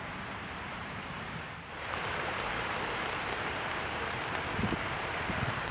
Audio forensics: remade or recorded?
remade